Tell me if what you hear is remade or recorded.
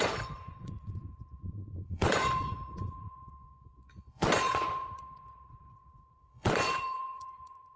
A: remade